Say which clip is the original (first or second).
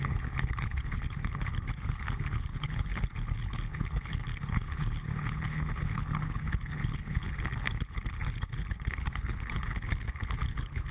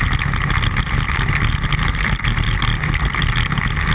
second